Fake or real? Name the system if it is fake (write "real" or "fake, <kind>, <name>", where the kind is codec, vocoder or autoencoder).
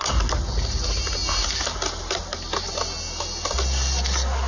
real